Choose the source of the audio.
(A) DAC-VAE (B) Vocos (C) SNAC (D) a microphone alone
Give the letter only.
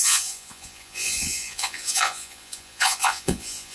B